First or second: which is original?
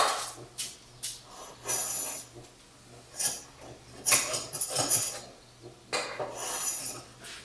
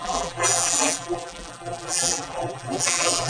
first